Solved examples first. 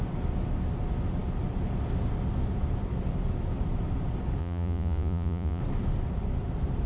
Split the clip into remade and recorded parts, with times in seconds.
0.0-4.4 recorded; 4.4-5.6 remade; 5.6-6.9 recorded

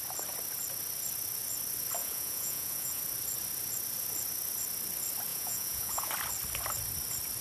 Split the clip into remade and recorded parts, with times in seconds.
0.0-2.0 recorded; 2.0-3.0 remade; 3.0-5.3 recorded; 5.3-6.1 remade; 6.1-7.4 recorded

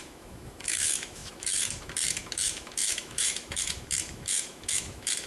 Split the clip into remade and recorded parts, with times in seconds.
0.0-5.3 remade

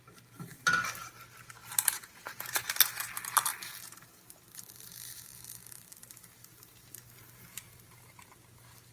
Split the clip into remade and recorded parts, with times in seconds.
0.0-1.6 recorded; 1.6-2.7 remade; 2.7-3.5 recorded; 3.5-6.9 remade; 6.9-8.9 recorded

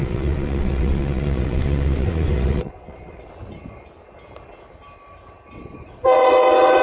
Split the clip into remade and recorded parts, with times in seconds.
0.0-3.3 remade; 3.3-5.8 recorded; 5.8-6.8 remade

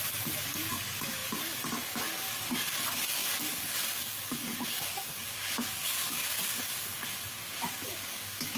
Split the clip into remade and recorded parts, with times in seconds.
0.0-7.0 remade; 7.0-7.6 recorded; 7.6-8.6 remade

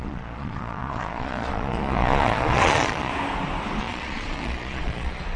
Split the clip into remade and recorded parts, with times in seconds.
0.0-3.1 remade; 3.1-3.8 recorded; 3.8-5.4 remade

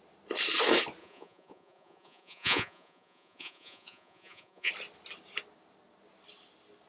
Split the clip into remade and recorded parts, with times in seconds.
0.0-1.0 recorded; 1.0-4.7 remade; 4.7-6.9 recorded